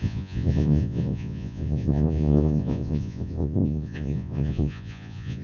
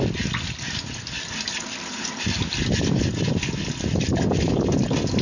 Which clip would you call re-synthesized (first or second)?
first